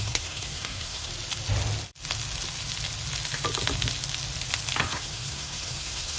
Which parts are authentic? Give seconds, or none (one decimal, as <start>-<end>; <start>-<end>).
1.1-4.8